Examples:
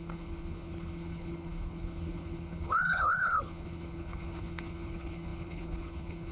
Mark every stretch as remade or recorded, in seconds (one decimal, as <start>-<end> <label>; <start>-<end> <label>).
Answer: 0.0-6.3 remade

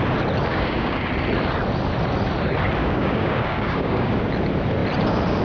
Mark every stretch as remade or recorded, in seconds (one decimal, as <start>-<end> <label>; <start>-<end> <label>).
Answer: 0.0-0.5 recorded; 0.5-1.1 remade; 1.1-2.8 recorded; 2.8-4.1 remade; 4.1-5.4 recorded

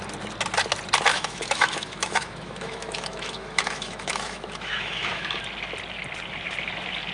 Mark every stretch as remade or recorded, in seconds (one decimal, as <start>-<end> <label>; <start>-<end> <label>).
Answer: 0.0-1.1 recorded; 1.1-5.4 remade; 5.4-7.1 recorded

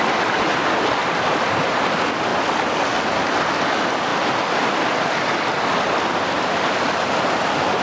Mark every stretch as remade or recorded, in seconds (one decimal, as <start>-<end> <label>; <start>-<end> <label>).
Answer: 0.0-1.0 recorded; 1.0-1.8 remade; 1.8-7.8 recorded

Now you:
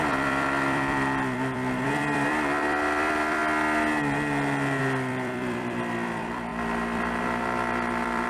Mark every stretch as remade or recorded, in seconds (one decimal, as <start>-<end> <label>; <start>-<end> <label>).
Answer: 0.0-3.4 remade; 3.4-4.8 recorded; 4.8-8.3 remade